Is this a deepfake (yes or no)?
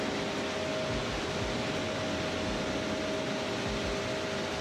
no